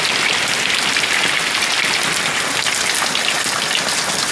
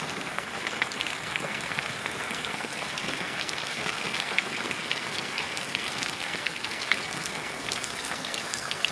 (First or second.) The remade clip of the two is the second